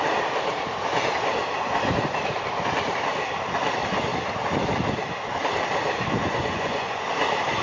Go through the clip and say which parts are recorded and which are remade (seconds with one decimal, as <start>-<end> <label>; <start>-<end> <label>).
0.0-6.2 recorded; 6.2-7.0 remade; 7.0-7.6 recorded